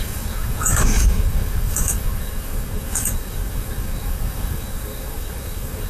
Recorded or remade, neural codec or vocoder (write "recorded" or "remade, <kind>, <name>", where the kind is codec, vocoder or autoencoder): remade, codec, DAC